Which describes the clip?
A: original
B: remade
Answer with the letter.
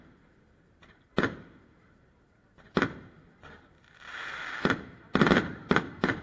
A